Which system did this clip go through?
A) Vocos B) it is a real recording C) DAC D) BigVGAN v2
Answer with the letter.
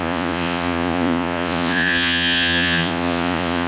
A